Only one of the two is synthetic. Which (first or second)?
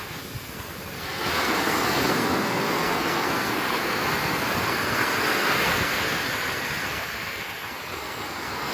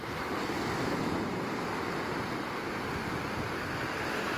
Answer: first